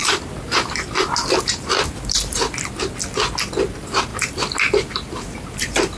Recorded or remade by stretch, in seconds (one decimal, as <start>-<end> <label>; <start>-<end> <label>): 0.0-2.7 remade; 2.7-4.1 recorded; 4.1-6.0 remade

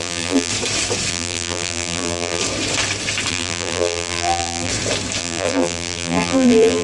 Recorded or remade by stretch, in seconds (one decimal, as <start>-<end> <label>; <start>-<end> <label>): 0.0-0.5 remade; 0.5-1.1 recorded; 1.1-2.4 remade; 2.4-3.3 recorded; 3.3-4.7 remade; 4.7-5.2 recorded; 5.2-6.8 remade

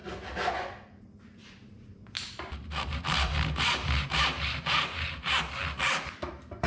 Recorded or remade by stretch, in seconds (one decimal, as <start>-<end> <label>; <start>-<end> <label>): 0.0-1.4 recorded; 1.4-5.4 remade; 5.4-6.7 recorded

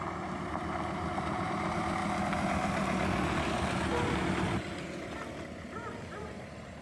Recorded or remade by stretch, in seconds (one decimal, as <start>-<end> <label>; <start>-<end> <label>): 0.0-2.0 remade; 2.0-6.1 recorded; 6.1-6.8 remade